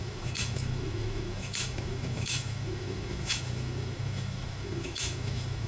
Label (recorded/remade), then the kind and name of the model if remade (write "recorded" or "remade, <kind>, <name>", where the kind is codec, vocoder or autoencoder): remade, autoencoder, DAC-VAE